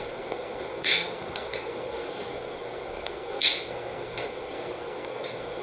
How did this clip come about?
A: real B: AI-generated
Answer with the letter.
B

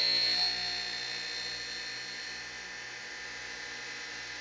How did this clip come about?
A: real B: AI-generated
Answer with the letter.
A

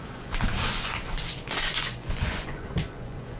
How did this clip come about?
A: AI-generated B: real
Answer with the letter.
A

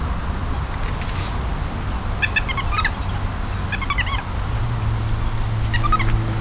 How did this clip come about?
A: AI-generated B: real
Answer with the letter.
B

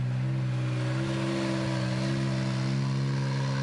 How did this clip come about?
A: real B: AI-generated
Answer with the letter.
A